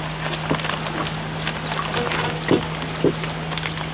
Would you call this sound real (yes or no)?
yes